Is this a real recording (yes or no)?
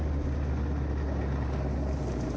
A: yes